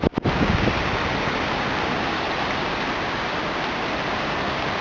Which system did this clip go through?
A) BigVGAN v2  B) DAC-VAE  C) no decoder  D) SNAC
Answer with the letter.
C